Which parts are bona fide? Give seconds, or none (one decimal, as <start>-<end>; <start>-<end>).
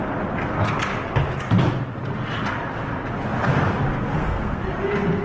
0.0-4.1; 4.6-5.2